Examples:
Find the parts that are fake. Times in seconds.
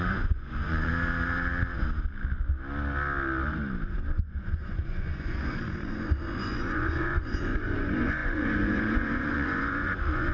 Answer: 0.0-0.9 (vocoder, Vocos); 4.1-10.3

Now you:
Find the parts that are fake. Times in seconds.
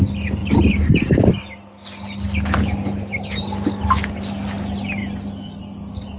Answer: none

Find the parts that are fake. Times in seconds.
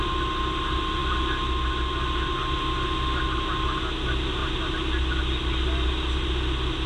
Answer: none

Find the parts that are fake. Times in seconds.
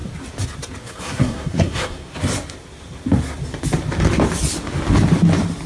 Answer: 0.8-2.1 (codec, SNAC)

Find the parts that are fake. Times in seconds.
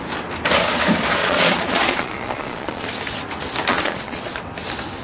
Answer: 1.2-2.9 (vocoder, Vocos); 3.7-4.3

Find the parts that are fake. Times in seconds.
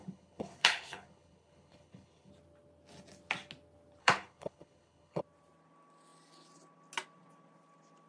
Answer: 0.0-2.3 (codec, HILCodec); 4.0-5.2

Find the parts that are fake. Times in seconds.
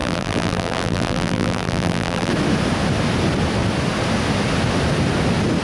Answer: 0.0-2.3 (vocoder, BigVGAN v2)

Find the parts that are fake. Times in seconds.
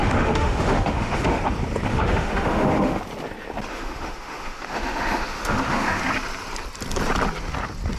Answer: 0.0-1.4 (autoencoder, DAC-VAE); 1.9-3.0; 3.7-6.0